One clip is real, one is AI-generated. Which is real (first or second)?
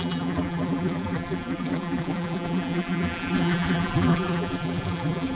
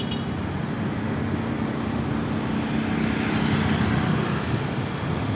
second